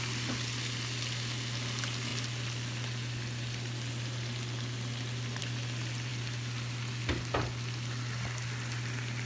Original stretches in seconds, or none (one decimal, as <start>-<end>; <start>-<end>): 0.0-9.3